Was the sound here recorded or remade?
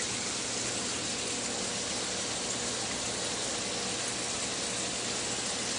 recorded